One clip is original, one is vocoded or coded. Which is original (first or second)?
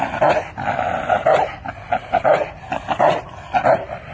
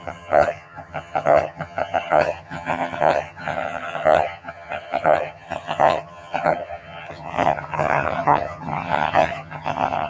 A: first